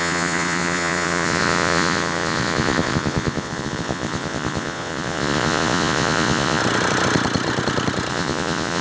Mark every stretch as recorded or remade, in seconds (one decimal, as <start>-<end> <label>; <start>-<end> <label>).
0.0-6.6 remade; 6.6-8.1 recorded; 8.1-8.8 remade